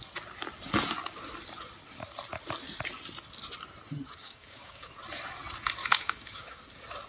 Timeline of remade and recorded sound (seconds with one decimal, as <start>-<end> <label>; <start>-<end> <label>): 0.0-4.2 recorded; 4.2-4.9 remade; 4.9-5.8 recorded; 5.8-6.6 remade; 6.6-7.1 recorded